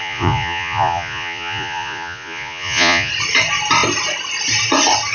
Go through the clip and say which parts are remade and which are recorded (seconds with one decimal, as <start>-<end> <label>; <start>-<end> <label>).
0.0-3.1 remade; 3.1-5.1 recorded